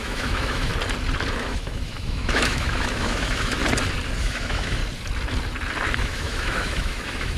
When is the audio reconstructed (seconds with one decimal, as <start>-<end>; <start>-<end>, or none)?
0.0-0.7; 1.3-3.6; 4.2-4.8; 6.0-7.4